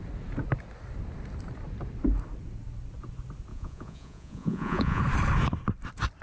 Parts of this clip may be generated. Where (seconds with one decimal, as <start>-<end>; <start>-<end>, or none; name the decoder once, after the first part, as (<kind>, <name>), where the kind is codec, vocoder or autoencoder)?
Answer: 3.5-5.0 (vocoder, Vocos)